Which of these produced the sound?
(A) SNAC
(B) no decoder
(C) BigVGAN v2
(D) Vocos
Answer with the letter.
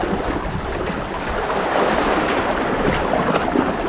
B